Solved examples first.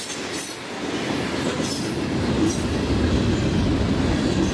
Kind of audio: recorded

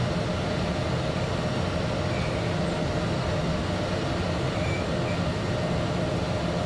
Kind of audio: recorded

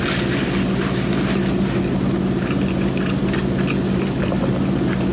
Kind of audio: recorded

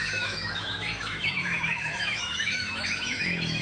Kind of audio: remade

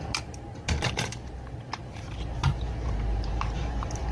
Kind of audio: remade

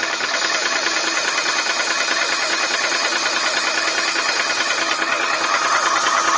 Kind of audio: recorded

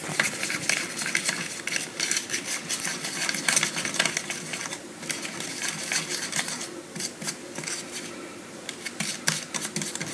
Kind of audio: recorded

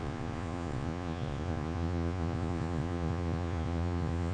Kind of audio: remade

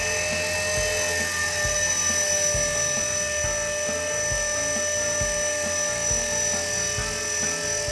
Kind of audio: recorded